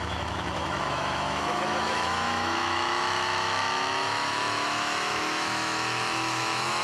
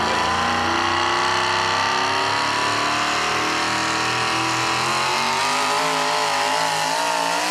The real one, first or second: second